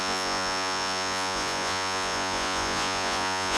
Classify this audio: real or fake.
fake